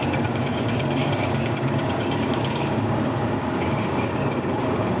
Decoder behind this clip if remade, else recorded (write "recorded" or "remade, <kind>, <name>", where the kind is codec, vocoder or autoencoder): remade, codec, DAC